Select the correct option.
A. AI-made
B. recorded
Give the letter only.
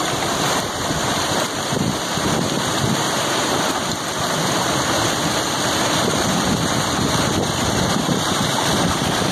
A